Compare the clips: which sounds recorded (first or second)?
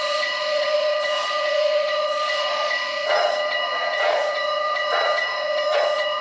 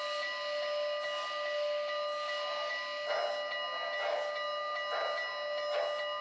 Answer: second